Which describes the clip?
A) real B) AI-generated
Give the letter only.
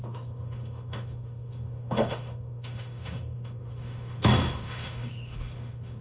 B